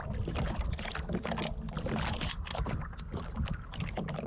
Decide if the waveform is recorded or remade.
recorded